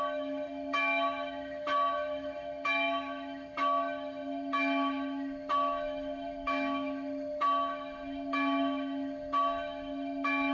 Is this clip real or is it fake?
fake